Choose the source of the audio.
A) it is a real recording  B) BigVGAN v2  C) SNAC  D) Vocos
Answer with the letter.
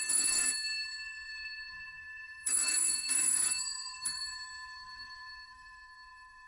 C